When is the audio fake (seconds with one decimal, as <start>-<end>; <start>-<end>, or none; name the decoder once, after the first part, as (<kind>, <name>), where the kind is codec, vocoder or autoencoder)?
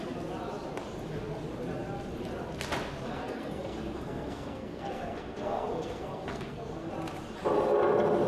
3.1-6.9 (codec, SNAC)